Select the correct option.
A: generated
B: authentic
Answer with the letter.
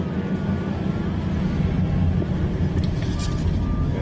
B